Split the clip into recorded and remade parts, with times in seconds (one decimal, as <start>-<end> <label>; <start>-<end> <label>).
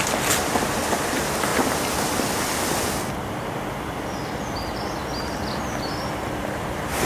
0.0-7.1 recorded